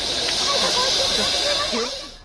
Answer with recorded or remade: recorded